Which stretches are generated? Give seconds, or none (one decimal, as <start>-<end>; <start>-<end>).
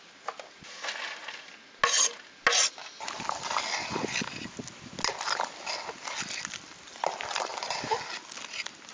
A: none